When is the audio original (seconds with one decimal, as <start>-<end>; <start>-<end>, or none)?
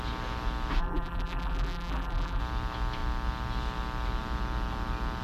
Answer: 0.0-0.8; 2.4-5.2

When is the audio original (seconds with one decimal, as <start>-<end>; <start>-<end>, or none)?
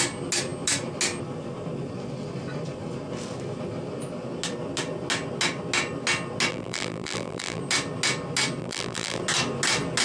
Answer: 0.0-6.5; 7.6-8.6; 9.2-10.0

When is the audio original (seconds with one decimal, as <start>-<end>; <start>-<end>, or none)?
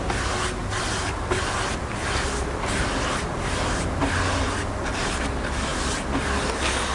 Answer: 0.0-6.9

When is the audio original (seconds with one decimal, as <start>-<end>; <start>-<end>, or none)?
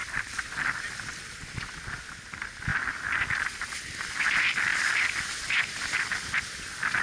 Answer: 1.8-4.7; 5.8-7.0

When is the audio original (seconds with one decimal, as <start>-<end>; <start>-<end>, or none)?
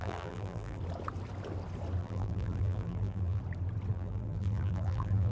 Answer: 0.8-2.0; 3.4-3.9